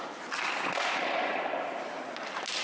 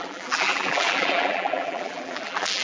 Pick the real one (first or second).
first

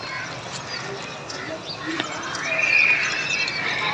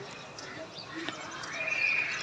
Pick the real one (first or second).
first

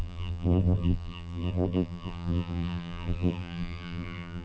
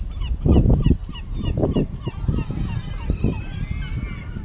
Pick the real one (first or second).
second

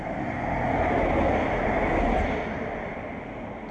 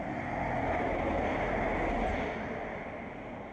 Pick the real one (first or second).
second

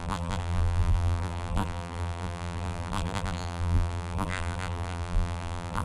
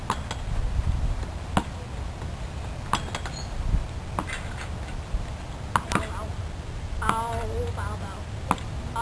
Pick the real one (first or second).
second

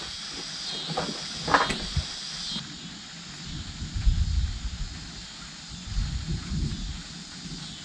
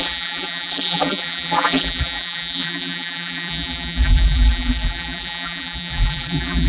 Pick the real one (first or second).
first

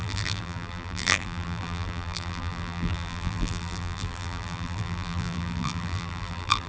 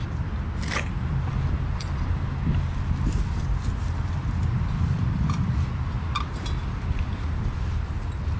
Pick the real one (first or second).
second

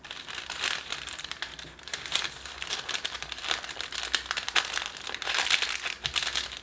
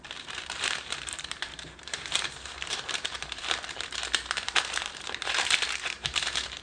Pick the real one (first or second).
first